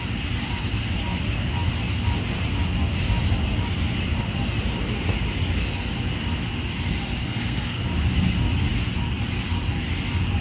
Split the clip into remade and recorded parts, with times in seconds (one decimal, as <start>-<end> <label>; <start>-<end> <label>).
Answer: 0.0-7.2 recorded; 7.2-7.8 remade; 7.8-10.4 recorded